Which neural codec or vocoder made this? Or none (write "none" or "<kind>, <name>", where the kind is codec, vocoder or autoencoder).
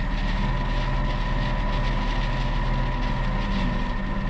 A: none